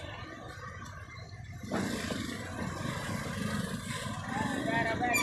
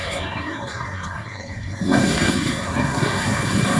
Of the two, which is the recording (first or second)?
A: first